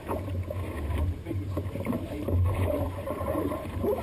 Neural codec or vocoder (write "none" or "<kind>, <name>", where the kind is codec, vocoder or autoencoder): vocoder, BigVGAN v2